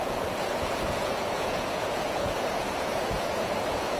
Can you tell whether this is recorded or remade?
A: remade